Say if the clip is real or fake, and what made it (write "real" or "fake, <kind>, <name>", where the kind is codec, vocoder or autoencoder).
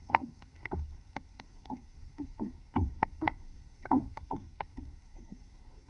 fake, codec, SNAC